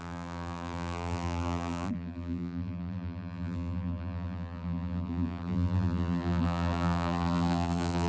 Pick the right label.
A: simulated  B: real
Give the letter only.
A